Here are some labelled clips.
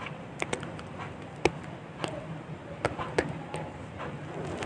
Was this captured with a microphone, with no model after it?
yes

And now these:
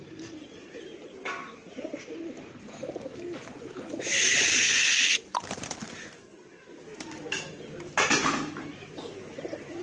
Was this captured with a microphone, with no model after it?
no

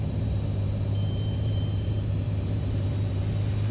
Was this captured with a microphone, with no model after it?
no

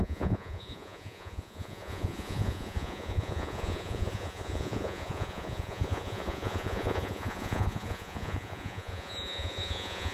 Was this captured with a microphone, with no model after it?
no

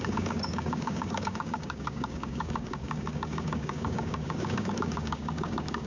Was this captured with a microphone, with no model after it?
no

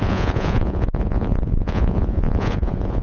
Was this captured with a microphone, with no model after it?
no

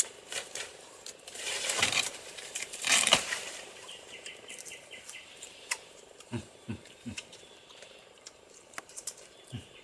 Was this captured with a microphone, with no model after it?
no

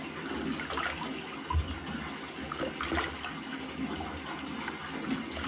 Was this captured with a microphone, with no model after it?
yes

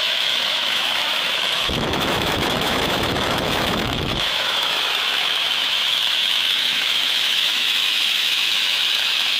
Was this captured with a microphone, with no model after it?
no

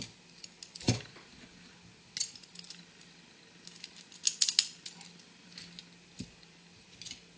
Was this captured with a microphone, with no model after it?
yes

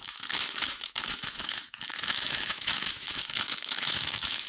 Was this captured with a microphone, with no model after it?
no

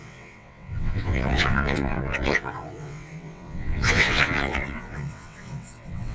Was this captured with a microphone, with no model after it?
no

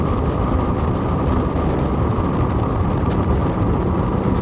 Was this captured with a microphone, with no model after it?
no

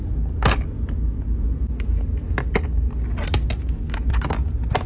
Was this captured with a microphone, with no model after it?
yes